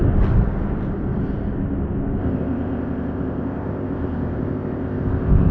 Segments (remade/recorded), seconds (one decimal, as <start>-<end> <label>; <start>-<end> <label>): 0.0-2.2 recorded; 2.2-5.5 remade